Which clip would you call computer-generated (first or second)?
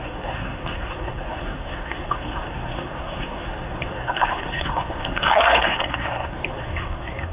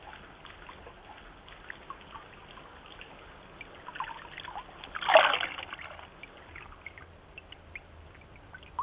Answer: first